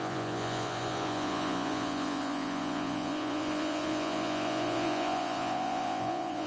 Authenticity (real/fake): fake